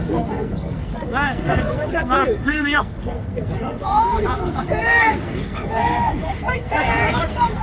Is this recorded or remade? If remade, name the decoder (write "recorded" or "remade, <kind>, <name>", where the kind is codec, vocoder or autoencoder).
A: remade, codec, SNAC